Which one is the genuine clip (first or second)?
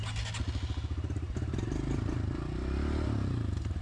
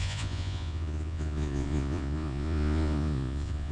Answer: first